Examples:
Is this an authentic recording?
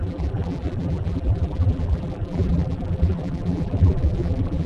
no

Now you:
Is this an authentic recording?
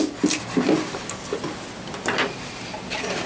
yes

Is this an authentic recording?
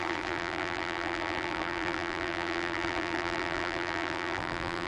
no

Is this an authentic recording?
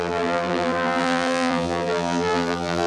no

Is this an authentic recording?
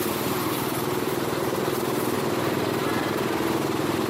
no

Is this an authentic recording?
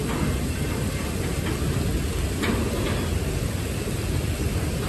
yes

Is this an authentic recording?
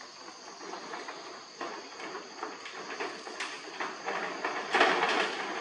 yes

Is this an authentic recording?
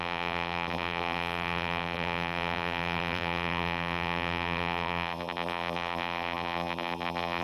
no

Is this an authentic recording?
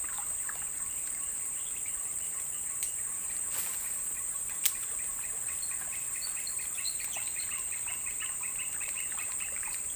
no